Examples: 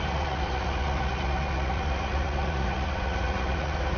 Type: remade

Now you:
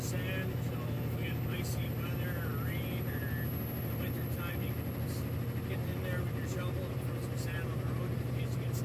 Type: recorded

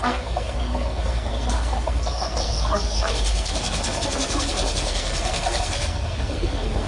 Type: remade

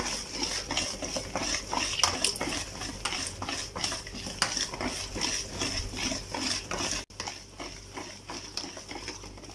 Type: recorded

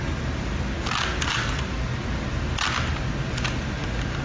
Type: recorded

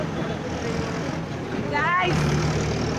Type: recorded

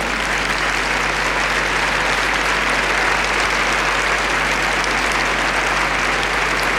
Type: recorded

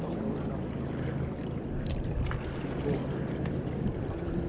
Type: recorded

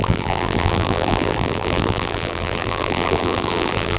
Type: remade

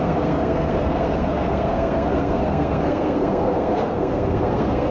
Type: remade